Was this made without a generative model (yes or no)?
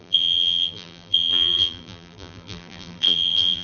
no